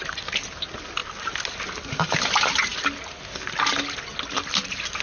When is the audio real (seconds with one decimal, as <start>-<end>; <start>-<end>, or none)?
0.0-5.0